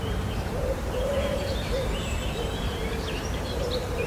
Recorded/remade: remade